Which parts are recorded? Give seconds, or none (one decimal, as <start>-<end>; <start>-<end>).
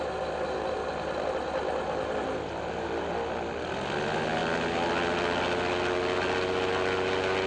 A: 0.0-7.5